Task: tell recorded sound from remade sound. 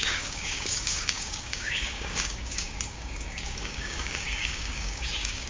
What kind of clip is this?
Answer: remade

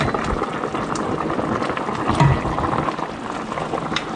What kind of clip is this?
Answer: recorded